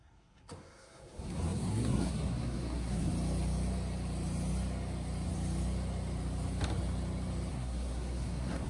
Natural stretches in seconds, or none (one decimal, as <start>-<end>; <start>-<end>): 3.1-7.5